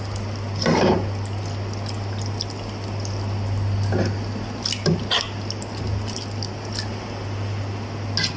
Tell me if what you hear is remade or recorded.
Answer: recorded